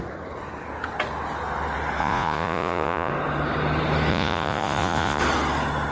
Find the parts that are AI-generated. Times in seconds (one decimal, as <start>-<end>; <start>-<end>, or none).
2.0-3.1; 4.1-5.2